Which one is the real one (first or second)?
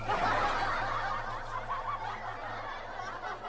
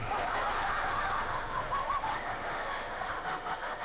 first